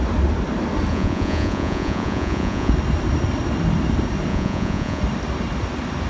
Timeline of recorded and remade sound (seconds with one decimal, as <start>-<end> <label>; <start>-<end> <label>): 0.0-0.9 recorded; 0.9-2.7 remade; 2.7-4.3 recorded; 4.3-5.0 remade; 5.0-6.1 recorded